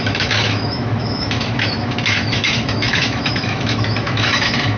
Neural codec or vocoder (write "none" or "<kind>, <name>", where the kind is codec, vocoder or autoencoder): autoencoder, DAC-VAE